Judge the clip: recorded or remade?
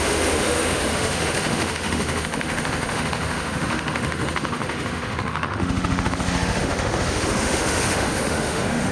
remade